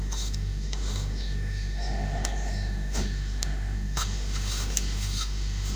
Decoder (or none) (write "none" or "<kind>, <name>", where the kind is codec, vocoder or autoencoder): autoencoder, DAC-VAE